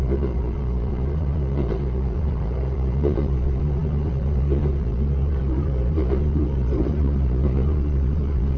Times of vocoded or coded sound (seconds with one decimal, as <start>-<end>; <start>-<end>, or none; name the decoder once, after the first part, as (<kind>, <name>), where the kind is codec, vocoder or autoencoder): 0.0-8.6 (vocoder, Vocos)